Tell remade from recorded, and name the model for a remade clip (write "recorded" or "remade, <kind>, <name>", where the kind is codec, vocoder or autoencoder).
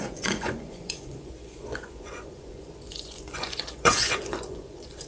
remade, vocoder, Vocos